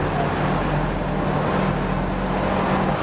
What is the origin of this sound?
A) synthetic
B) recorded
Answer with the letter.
B